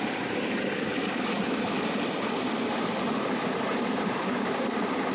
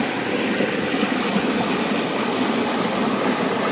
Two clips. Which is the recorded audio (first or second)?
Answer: second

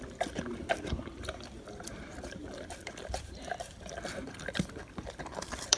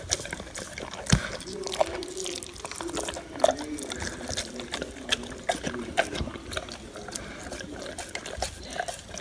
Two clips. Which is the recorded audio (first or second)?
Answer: second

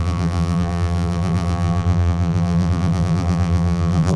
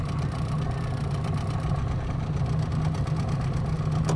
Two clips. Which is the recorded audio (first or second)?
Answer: second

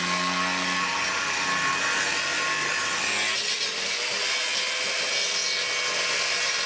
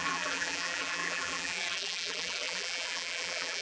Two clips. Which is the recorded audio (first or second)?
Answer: first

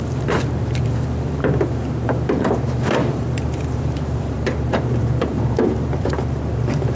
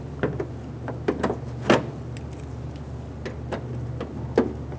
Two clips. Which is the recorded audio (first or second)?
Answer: second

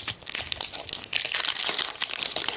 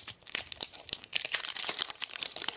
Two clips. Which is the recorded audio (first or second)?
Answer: first